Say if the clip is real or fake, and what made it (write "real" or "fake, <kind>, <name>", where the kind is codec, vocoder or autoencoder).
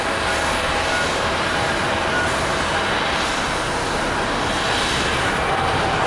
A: real